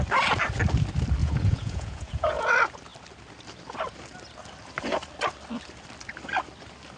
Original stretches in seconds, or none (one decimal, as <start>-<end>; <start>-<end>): 0.0-1.2; 2.5-7.0